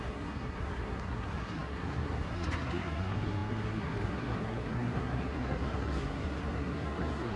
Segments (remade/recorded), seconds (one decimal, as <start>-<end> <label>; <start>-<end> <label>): 0.0-7.4 remade